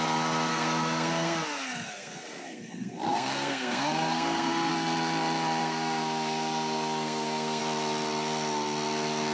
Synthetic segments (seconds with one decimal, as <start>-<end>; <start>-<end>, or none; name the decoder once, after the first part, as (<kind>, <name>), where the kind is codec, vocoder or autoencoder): 0.5-4.7 (codec, SNAC); 5.6-7.6